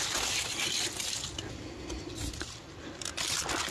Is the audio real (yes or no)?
yes